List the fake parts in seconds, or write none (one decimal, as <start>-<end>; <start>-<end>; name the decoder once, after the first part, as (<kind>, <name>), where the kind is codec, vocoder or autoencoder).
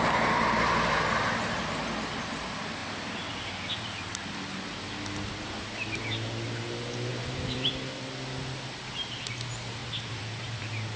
2.8-3.3 (vocoder, BigVGAN v2); 7.1-7.7; 9.8-10.6